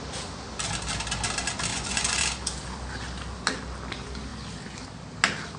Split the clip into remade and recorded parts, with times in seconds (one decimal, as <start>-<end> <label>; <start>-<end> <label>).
0.0-1.7 recorded; 1.7-2.2 remade; 2.2-5.6 recorded